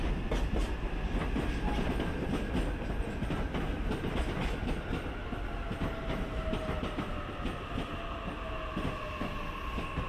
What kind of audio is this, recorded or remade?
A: recorded